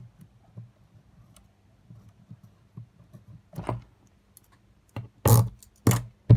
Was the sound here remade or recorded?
recorded